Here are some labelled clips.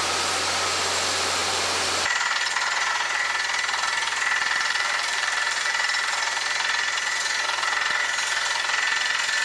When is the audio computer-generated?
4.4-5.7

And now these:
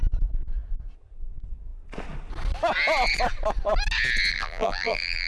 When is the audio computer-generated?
4.3-5.3